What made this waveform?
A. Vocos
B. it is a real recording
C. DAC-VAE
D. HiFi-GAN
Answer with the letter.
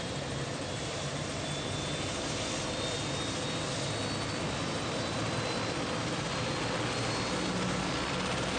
B